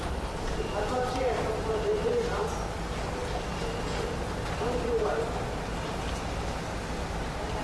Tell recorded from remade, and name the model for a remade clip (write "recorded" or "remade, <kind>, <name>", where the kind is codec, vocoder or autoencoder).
recorded